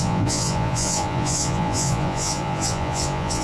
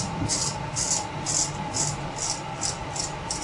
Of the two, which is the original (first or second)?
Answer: second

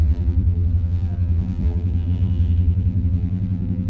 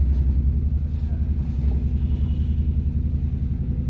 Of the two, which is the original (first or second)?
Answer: second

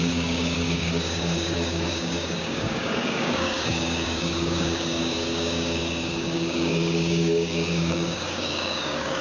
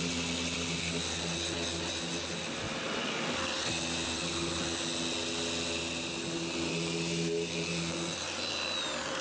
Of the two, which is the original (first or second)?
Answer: second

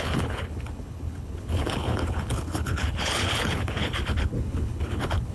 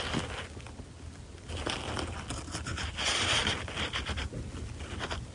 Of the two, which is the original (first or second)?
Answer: second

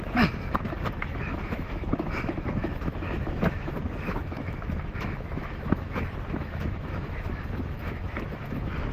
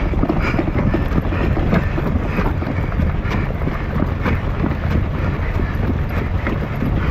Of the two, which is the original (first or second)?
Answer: second